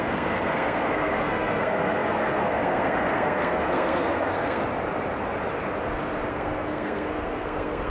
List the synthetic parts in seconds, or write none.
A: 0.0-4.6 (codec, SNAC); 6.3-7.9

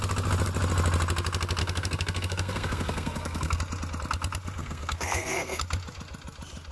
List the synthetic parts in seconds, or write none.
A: 1.6-3.6 (codec, SNAC); 4.6-5.6

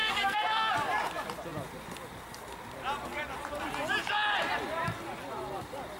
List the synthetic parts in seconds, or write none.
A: 0.0-0.7 (codec, SNAC)

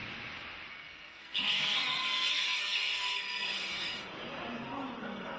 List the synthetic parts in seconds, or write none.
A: 0.7-4.1 (codec, SNAC); 5.0-5.4

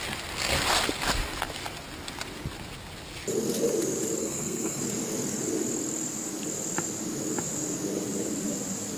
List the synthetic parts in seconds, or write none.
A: 4.2-4.8 (codec, SNAC)